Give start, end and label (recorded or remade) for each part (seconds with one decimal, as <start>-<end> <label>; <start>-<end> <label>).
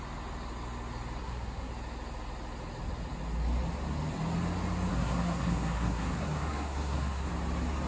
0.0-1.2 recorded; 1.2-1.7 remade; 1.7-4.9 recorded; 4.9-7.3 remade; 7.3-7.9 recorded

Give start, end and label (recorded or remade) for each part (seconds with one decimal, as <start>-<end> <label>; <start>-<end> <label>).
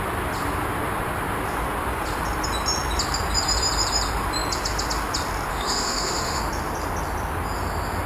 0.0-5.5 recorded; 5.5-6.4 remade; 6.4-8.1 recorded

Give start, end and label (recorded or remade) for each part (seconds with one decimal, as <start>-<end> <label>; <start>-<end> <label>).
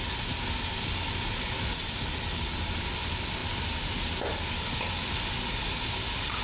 0.0-6.4 recorded